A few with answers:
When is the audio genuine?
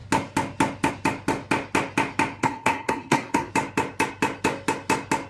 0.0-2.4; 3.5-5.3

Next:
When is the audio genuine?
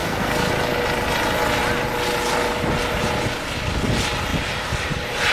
0.5-5.3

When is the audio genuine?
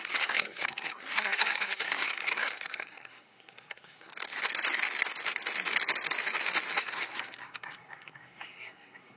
4.1-6.8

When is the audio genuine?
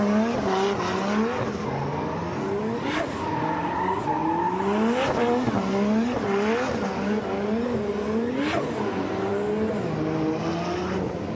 0.0-11.4